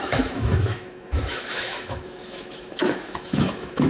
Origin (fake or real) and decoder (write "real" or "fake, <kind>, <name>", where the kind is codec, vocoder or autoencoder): fake, autoencoder, DAC-VAE